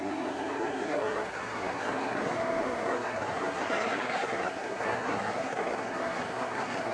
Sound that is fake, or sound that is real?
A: fake